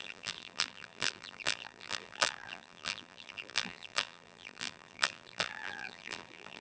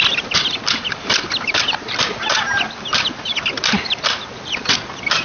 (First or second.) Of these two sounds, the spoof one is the first